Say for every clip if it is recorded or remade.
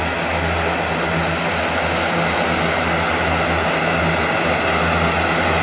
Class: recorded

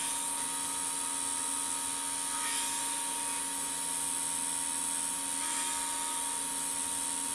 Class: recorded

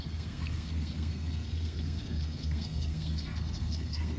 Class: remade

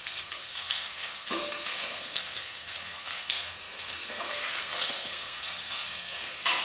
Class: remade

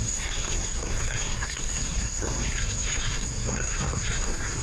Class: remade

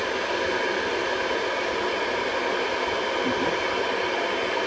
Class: recorded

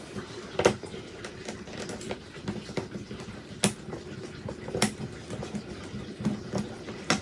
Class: recorded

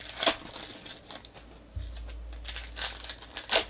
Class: recorded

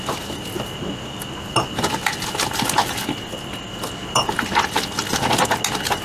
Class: recorded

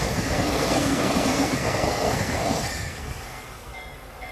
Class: remade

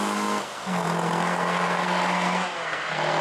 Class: remade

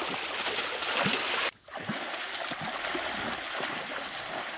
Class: recorded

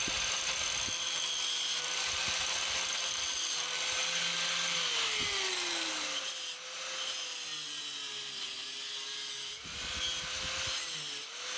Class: recorded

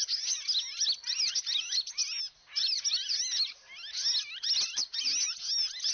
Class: recorded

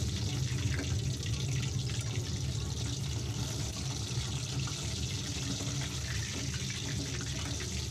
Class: recorded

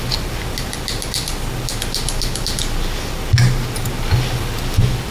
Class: recorded